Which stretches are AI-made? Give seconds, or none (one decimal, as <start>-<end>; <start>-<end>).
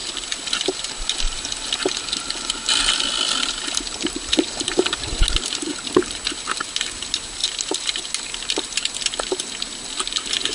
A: none